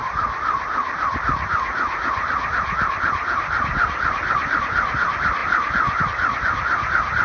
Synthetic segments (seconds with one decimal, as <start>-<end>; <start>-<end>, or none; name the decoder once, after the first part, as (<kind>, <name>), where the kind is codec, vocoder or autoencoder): none